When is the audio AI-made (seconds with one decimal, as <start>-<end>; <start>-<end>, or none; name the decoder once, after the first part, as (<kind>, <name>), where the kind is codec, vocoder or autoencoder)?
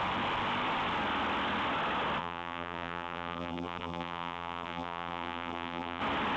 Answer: 2.2-6.0 (vocoder, BigVGAN v2)